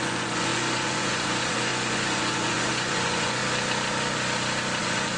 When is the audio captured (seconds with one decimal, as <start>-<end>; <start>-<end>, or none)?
3.4-4.8